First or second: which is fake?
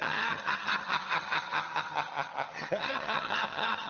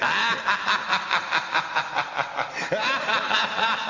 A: first